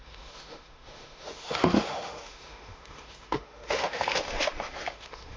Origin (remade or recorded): remade